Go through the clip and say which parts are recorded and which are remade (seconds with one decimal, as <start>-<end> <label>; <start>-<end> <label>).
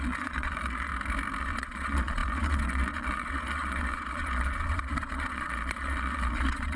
0.0-0.9 remade; 0.9-1.4 recorded; 1.4-6.8 remade